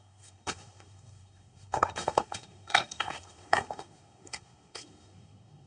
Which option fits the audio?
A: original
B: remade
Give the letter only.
B